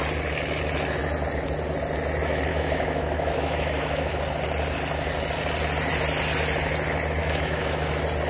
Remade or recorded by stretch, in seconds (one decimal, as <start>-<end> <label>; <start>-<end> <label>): 0.0-2.5 recorded; 2.5-4.2 remade; 4.2-7.2 recorded; 7.2-7.9 remade; 7.9-8.3 recorded